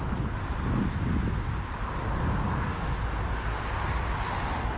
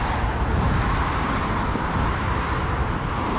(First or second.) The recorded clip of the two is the first